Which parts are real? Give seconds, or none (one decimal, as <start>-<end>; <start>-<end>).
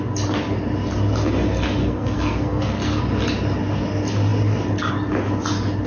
0.0-1.8; 3.0-5.9